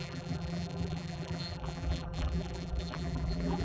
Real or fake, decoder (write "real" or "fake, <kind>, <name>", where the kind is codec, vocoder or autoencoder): fake, vocoder, BigVGAN v2